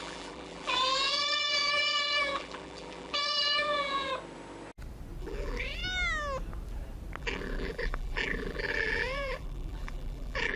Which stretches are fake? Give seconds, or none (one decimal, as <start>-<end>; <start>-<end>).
0.0-4.1; 5.2-5.8; 7.2-10.6